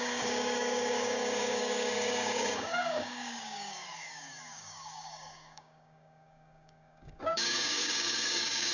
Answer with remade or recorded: remade